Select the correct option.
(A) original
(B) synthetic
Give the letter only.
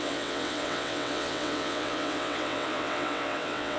B